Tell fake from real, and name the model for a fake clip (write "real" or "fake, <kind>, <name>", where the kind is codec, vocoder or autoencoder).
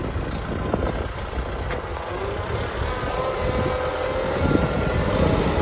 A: real